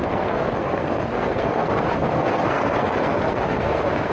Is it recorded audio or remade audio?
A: remade